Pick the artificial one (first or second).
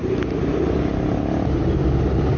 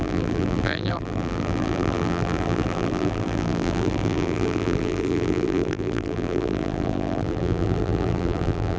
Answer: second